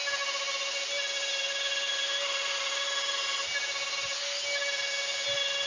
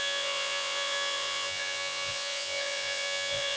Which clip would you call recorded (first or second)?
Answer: first